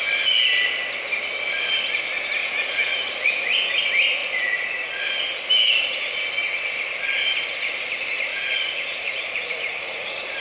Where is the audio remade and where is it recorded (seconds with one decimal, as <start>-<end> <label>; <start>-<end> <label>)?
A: 0.0-2.4 recorded; 2.4-3.7 remade; 3.7-4.2 recorded; 4.2-5.0 remade; 5.0-8.3 recorded; 8.3-10.4 remade

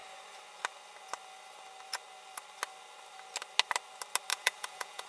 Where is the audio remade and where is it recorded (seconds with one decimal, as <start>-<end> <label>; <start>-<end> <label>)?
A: 0.0-4.3 recorded; 4.3-5.1 remade

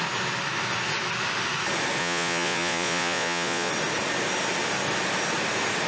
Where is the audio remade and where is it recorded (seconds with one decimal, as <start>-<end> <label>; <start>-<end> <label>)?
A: 0.0-2.0 recorded; 2.0-3.7 remade; 3.7-5.9 recorded

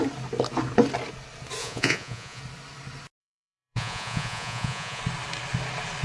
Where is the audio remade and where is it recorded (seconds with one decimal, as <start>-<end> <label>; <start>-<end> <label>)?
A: 0.0-1.6 recorded; 1.6-2.4 remade; 2.4-3.2 recorded; 3.2-5.0 remade; 5.0-6.0 recorded